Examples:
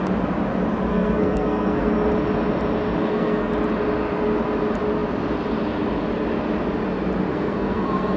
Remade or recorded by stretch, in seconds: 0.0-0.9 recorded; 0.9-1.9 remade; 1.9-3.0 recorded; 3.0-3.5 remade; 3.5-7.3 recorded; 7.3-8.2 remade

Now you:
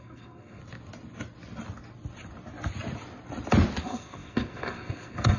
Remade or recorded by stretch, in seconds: 0.0-0.6 remade; 0.6-3.8 recorded; 3.8-5.4 remade

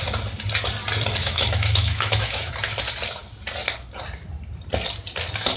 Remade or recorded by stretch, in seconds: 0.0-1.2 recorded; 1.2-2.5 remade; 2.5-5.6 recorded